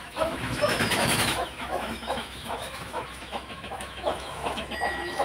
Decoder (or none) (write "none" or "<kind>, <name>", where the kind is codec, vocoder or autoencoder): autoencoder, DAC-VAE